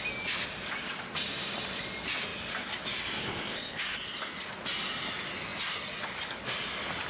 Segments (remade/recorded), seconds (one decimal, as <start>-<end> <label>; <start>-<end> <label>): 0.0-3.2 recorded; 3.2-3.8 remade; 3.8-7.1 recorded